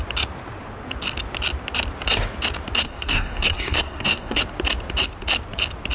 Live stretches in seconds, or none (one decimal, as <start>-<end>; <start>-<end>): 0.0-2.8; 4.4-5.9